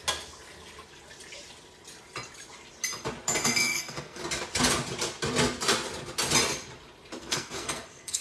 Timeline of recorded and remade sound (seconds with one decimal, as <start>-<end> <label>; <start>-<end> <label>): 0.0-3.4 recorded; 3.4-4.2 remade; 4.2-7.2 recorded; 7.2-8.2 remade